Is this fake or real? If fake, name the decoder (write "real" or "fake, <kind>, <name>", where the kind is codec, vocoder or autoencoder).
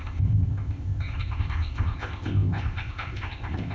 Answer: fake, codec, ZipCodec